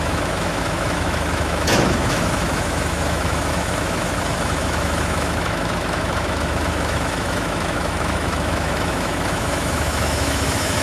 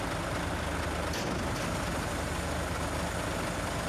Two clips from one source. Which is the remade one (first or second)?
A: first